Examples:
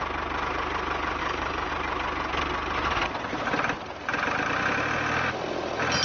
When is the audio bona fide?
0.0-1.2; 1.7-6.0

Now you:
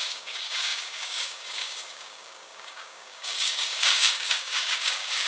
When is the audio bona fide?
none

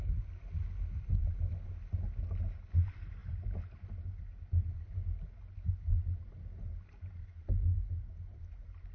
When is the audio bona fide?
0.0-8.9